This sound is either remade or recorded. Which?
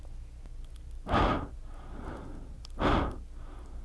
recorded